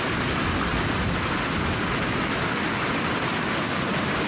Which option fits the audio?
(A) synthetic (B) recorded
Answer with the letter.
B